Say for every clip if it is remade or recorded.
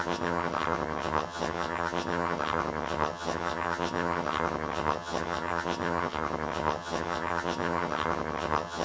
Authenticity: remade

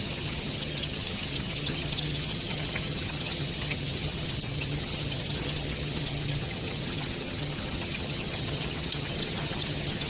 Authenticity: remade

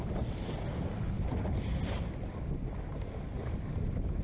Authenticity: recorded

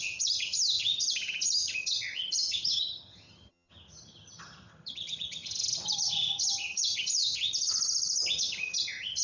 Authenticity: remade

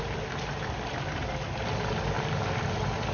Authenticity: recorded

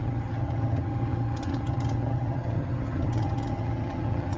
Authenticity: remade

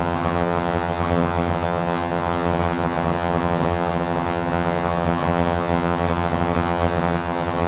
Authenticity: remade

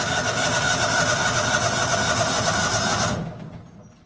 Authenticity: recorded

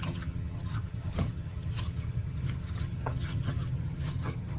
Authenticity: remade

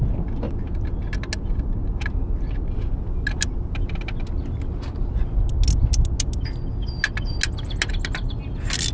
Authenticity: recorded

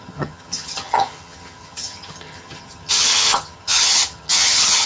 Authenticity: remade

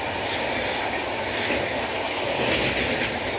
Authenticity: recorded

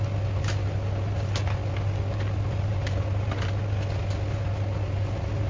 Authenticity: recorded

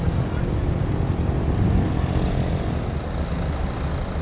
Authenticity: recorded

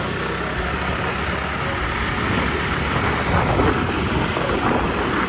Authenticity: recorded